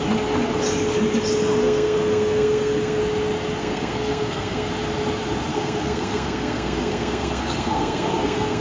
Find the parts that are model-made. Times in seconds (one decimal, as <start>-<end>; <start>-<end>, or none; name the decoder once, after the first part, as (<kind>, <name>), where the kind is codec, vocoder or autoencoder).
1.6-3.0 (codec, SNAC); 3.6-4.7; 5.5-8.6